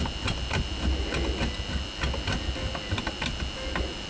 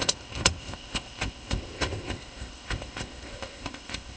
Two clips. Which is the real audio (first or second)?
first